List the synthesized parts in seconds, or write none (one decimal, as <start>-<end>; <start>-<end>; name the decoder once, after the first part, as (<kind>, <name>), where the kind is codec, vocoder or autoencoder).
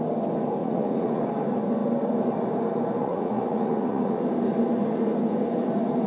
0.6-1.2 (vocoder, Vocos); 3.0-4.2